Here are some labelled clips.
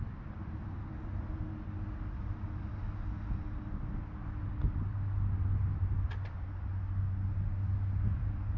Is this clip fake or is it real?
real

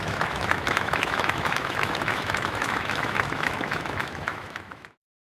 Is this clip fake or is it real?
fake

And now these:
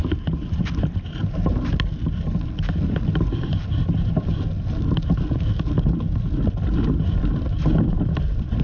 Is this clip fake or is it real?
real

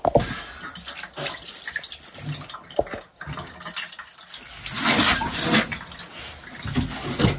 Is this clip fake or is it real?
real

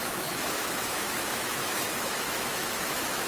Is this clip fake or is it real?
fake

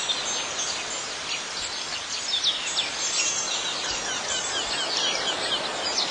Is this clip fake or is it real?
real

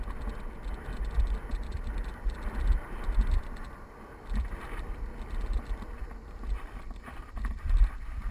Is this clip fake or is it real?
fake